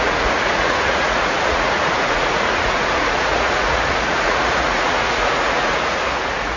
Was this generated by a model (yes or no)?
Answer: yes